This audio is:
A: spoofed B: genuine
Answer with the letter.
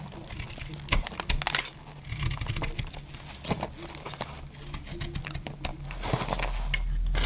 B